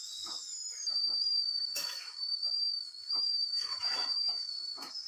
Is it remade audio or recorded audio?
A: remade